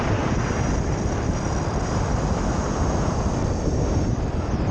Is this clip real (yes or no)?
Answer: yes